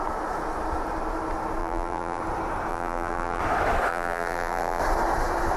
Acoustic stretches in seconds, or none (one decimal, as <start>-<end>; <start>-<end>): 0.0-1.6; 2.2-2.7; 3.4-3.9; 4.8-5.6